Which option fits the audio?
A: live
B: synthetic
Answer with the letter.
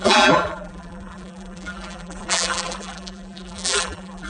B